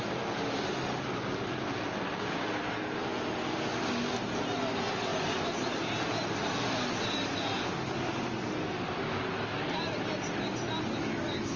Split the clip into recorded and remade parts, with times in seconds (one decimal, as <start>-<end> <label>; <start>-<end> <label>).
0.0-11.6 recorded